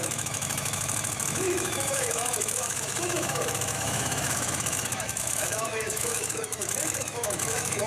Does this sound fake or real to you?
fake